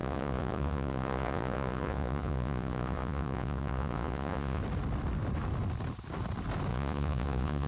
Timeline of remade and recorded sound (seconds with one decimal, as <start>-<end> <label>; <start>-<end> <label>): 0.0-4.6 remade; 4.6-6.7 recorded; 6.7-7.7 remade